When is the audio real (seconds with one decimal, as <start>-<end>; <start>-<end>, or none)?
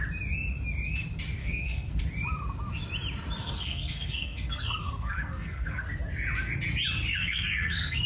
0.0-1.4; 2.0-3.4; 5.9-7.1